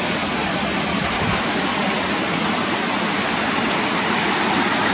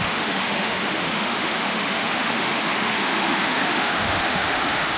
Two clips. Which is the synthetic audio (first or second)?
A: second